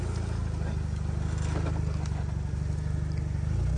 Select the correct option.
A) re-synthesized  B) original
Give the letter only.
B